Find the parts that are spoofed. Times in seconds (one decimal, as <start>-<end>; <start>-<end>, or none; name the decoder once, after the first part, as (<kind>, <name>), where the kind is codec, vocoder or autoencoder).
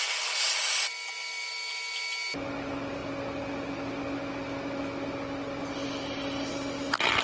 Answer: none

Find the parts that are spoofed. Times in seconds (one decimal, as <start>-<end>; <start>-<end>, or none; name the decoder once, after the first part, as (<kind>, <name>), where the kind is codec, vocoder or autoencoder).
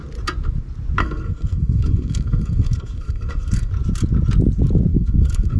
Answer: 1.0-3.7 (codec, SNAC); 4.9-5.6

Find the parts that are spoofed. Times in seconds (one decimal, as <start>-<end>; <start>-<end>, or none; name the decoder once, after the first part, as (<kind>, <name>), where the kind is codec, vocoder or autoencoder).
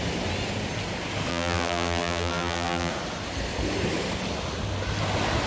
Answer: 1.3-2.9 (vocoder, BigVGAN v2)